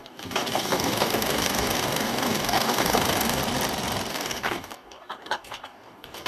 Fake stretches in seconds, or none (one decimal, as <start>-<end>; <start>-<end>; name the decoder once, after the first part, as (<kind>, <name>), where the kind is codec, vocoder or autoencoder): 0.0-3.4 (codec, DAC); 4.1-6.3